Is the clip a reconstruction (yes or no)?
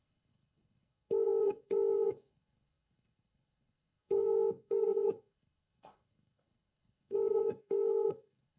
yes